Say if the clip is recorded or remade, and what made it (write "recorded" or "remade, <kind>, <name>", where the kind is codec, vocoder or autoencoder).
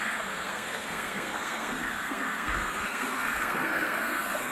remade, codec, SNAC